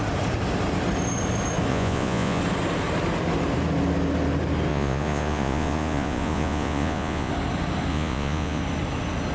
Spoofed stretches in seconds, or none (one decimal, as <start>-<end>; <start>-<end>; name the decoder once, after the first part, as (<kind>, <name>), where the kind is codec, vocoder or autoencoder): 1.7-2.4 (vocoder, Vocos); 4.7-7.3; 7.9-8.6